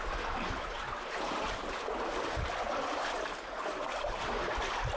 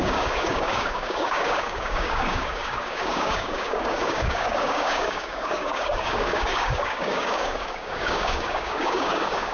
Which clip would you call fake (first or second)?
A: second